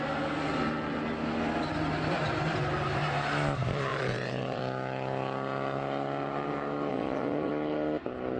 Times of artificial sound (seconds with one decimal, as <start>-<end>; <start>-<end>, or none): 3.9-4.6; 6.9-7.5